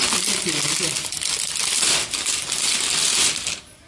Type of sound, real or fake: real